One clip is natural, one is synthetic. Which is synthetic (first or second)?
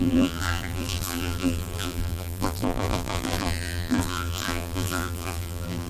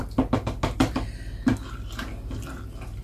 first